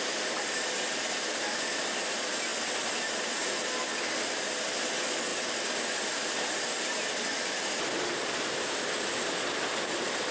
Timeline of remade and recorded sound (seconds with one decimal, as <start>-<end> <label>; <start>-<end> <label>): 0.0-5.3 recorded; 5.3-8.0 remade; 8.0-10.3 recorded